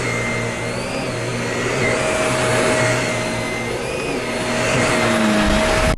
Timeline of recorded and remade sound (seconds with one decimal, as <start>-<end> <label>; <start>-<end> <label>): 0.0-6.0 recorded